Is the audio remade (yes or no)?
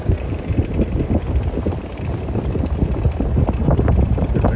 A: no